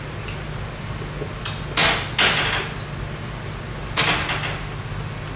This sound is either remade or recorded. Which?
recorded